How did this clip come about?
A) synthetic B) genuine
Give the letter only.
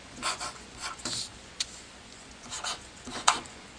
A